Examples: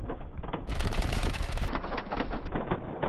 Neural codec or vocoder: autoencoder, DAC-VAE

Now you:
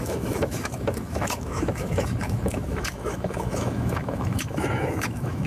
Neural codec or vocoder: autoencoder, DAC-VAE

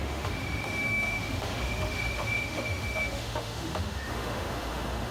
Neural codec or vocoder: autoencoder, DAC-VAE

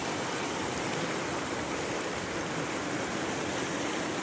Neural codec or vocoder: none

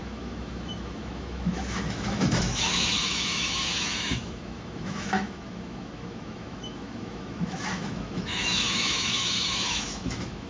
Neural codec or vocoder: autoencoder, DAC-VAE